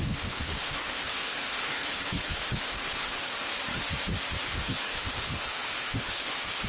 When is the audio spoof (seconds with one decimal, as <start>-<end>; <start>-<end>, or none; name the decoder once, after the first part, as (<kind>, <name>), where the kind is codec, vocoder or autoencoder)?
0.0-3.5 (codec, HILCodec); 4.4-6.7